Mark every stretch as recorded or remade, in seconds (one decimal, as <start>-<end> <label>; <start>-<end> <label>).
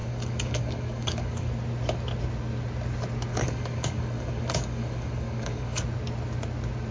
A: 0.0-1.5 remade; 1.5-3.3 recorded; 3.3-5.8 remade; 5.8-6.9 recorded